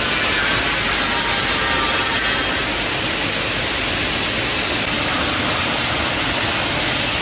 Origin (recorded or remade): recorded